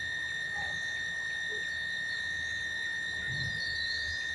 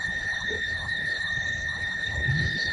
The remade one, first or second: second